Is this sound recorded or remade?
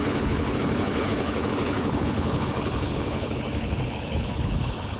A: remade